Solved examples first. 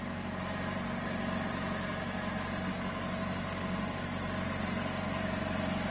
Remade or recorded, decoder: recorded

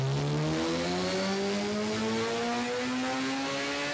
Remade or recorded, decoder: recorded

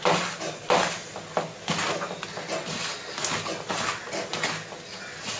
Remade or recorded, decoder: recorded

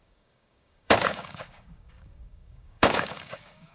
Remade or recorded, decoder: remade, codec, DAC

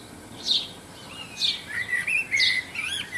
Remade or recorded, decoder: recorded